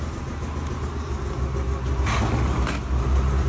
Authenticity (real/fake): real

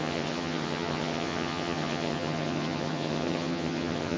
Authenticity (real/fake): fake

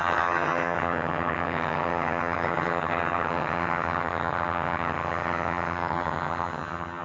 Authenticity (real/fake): fake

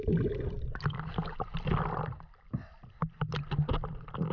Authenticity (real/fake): real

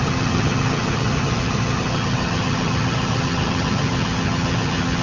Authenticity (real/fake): fake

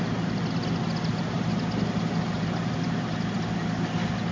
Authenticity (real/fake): real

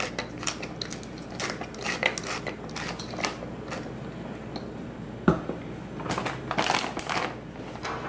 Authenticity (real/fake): real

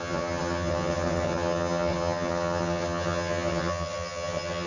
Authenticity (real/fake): fake